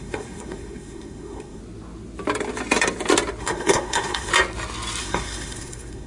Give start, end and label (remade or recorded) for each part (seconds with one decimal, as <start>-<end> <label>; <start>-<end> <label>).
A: 0.0-1.6 remade; 1.6-3.4 recorded; 3.4-4.3 remade; 4.3-5.0 recorded; 5.0-6.1 remade